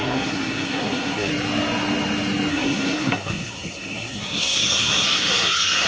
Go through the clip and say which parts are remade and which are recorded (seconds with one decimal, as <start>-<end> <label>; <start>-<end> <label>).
0.0-1.3 remade; 1.3-2.5 recorded; 2.5-5.9 remade